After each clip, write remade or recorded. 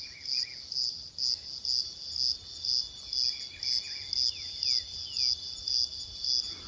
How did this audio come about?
recorded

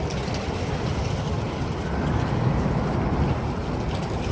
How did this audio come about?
recorded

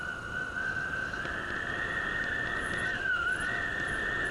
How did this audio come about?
recorded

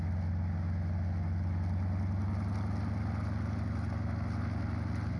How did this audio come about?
recorded